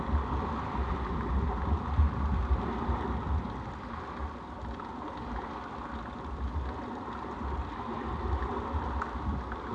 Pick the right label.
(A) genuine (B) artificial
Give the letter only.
A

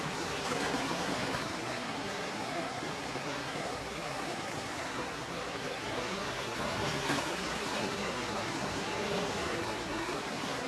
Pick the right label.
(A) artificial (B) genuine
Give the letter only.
A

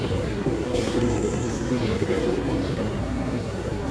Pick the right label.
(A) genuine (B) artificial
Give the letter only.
B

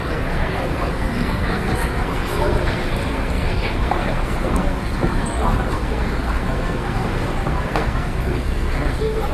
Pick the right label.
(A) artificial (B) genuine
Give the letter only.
A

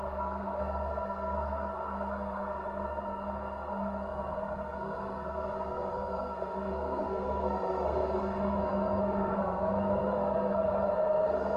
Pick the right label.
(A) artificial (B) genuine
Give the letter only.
A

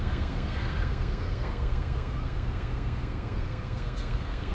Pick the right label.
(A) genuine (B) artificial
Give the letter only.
B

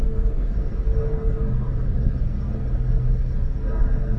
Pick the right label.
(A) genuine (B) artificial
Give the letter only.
B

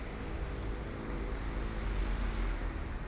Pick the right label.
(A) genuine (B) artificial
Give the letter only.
A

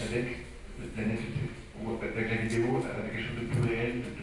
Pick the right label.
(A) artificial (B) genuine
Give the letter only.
B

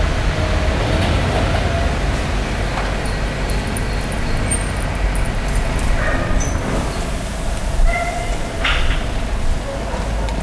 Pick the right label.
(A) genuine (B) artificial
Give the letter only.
A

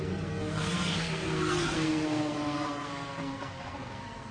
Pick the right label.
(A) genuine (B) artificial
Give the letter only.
B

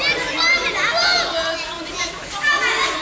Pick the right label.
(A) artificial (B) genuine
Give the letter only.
B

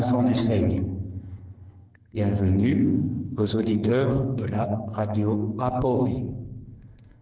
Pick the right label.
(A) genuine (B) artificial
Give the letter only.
B